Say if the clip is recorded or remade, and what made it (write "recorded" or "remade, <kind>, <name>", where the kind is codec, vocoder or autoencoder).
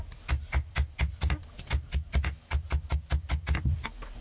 recorded